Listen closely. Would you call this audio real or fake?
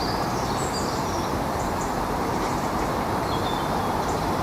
fake